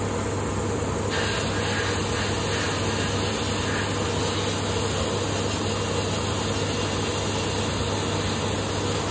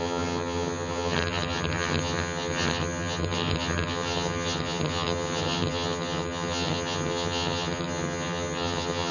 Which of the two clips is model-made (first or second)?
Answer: second